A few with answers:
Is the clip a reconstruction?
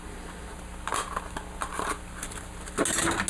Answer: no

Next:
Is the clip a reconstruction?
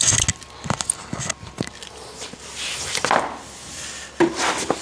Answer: no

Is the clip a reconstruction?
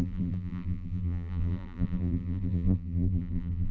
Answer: yes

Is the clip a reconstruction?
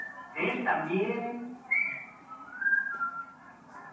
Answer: yes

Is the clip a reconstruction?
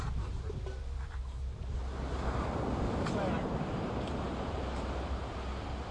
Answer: yes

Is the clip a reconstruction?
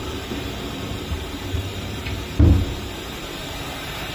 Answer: yes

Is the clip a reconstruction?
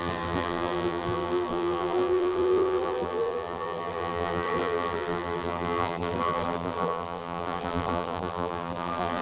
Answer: yes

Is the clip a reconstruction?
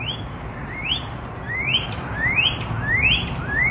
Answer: yes